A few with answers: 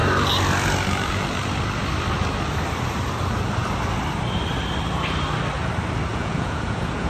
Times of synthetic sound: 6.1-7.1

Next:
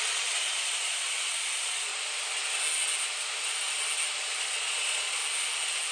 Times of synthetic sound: 0.0-1.9; 4.3-5.2

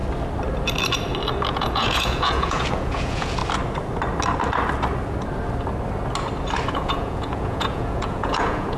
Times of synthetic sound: 1.5-3.4; 6.7-8.8